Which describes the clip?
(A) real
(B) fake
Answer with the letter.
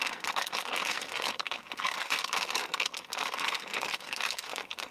B